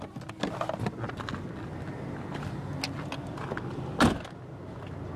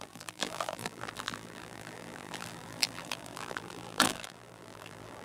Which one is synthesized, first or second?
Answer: second